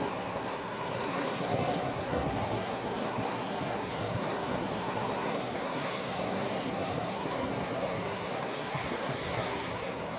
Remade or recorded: remade